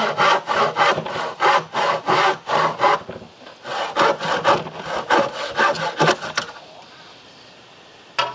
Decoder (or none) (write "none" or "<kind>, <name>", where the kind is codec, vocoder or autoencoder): none